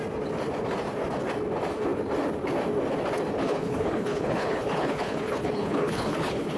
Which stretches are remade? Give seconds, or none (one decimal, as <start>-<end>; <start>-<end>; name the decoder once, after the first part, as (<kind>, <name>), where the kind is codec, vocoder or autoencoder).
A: 3.4-6.6 (codec, HILCodec)